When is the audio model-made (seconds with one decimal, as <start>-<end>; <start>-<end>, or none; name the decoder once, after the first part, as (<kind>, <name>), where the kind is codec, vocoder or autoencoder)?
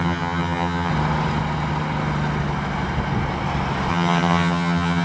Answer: 0.0-0.9 (vocoder, HiFi-GAN); 3.9-5.0